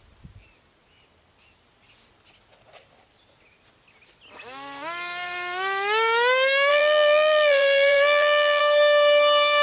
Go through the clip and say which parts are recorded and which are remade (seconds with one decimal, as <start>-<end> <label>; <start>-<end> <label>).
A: 0.0-6.7 recorded; 6.7-8.6 remade; 8.6-9.6 recorded